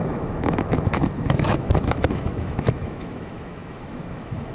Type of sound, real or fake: fake